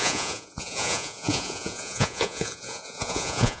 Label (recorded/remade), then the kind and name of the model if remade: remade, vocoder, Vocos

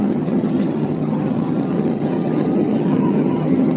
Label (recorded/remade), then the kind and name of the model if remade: remade, vocoder, HiFi-GAN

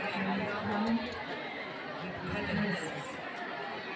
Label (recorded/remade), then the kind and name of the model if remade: recorded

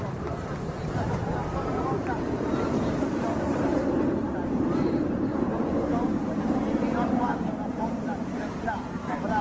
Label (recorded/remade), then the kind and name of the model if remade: remade, vocoder, BigVGAN v2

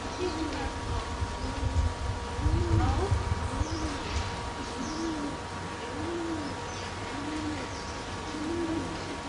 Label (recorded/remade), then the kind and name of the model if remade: recorded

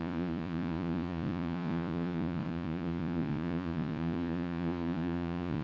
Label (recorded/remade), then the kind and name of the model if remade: remade, vocoder, Vocos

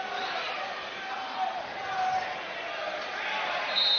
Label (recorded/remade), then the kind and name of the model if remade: recorded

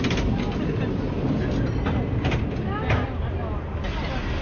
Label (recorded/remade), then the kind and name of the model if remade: recorded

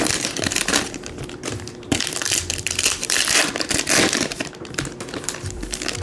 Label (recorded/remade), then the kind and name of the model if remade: remade, vocoder, BigVGAN v2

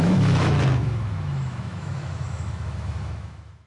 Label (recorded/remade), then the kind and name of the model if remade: remade, autoencoder, DAC-VAE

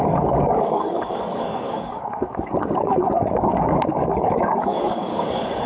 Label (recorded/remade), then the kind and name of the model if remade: remade, codec, DAC